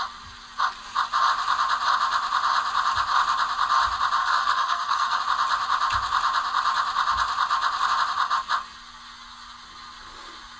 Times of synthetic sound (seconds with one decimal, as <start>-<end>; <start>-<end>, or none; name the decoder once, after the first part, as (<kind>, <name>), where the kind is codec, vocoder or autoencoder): 4.2-5.2 (codec, SNAC)

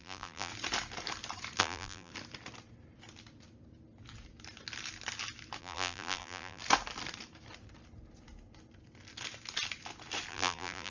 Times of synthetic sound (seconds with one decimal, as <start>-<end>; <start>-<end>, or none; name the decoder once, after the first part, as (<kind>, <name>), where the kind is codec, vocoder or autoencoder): 0.0-0.5 (vocoder, BigVGAN v2); 1.6-2.1; 5.6-6.6; 10.3-10.9

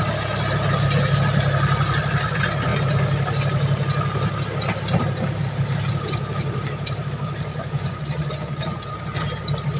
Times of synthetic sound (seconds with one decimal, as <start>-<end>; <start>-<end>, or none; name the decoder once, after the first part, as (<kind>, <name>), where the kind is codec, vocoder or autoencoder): 7.5-8.9 (vocoder, Vocos)

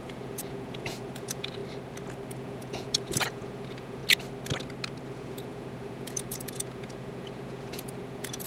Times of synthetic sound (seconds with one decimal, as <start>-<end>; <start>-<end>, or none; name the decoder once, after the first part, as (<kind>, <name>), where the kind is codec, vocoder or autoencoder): 0.0-1.6 (vocoder, Vocos); 2.3-4.0; 5.1-8.5

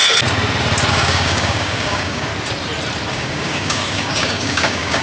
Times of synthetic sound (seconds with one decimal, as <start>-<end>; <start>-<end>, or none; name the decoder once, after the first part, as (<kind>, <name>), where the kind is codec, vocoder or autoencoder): 0.9-2.3 (codec, DAC); 3.1-5.0

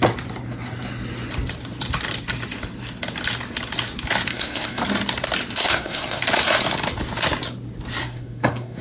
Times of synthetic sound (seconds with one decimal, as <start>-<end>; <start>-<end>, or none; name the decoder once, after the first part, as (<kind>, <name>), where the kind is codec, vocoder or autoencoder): 4.3-4.8 (codec, SNAC); 5.6-6.2; 8.0-8.8

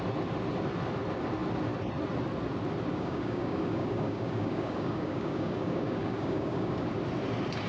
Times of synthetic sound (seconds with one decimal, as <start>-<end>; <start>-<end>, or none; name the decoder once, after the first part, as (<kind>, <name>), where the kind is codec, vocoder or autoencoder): 2.9-6.9 (codec, DAC)